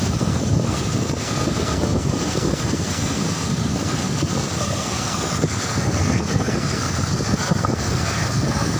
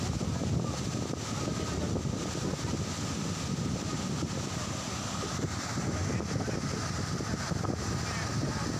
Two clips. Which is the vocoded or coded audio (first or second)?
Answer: first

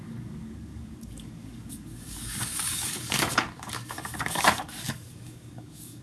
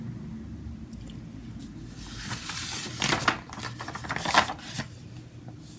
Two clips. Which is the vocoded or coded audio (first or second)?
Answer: first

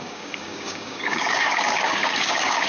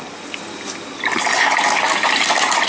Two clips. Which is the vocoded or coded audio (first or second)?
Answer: first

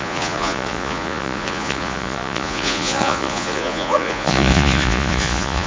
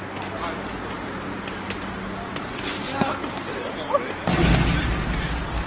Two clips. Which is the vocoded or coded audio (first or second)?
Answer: first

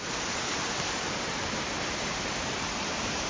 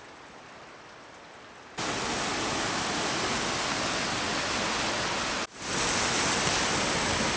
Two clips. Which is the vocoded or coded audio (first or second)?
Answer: first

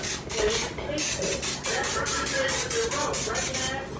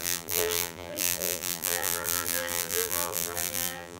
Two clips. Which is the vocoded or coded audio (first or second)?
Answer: second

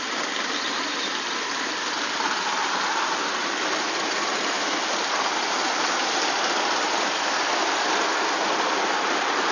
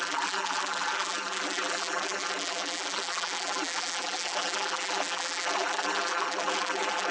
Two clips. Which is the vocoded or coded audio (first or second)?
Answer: second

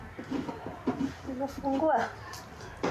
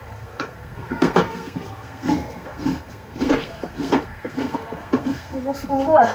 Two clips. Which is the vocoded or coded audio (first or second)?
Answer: second